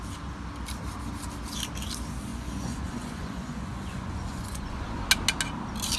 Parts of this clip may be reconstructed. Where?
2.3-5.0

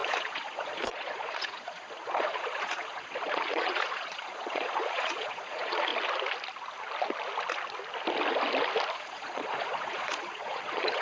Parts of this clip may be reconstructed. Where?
0.0-5.9; 8.9-11.0

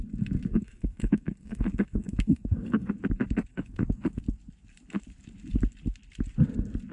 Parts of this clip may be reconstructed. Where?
0.5-2.9; 3.5-4.2

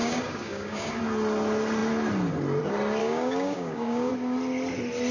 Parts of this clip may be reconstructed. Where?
0.0-1.0; 3.0-4.1